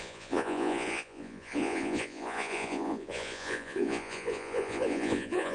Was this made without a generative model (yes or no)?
no